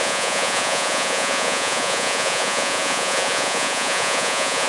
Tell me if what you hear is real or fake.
fake